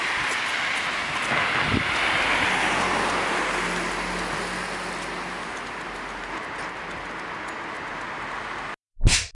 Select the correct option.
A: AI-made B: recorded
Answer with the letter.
B